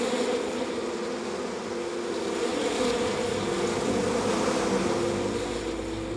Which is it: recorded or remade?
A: recorded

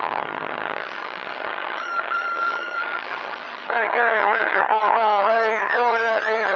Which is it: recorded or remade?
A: remade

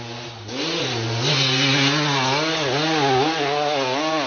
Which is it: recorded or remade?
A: recorded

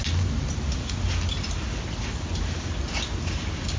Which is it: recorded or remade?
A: recorded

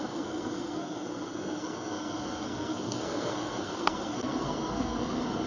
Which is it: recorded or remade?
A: remade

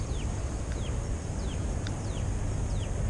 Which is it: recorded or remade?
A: recorded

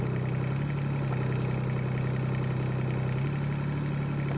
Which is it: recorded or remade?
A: recorded